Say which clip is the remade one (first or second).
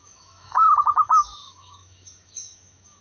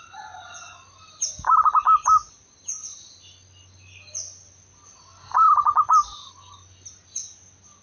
first